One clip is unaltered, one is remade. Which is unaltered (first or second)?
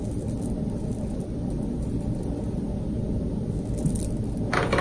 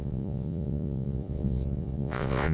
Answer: first